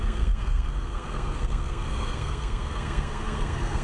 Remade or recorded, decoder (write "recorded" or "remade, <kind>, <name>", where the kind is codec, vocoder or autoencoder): remade, codec, SNAC